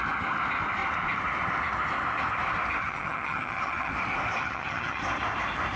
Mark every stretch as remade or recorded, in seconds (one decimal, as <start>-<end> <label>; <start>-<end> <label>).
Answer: 0.0-2.8 recorded; 2.8-3.9 remade; 3.9-4.4 recorded; 4.4-5.0 remade; 5.0-5.8 recorded